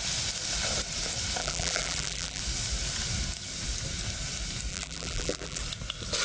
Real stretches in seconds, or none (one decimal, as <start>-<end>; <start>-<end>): 0.0-1.4; 2.4-4.7; 5.6-6.2